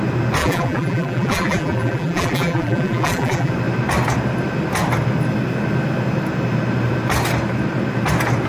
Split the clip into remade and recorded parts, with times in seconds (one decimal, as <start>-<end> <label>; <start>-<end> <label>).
0.0-0.4 recorded; 0.4-3.5 remade; 3.5-8.5 recorded